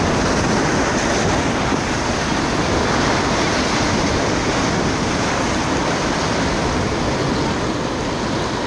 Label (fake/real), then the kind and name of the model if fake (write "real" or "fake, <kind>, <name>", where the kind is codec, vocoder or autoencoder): real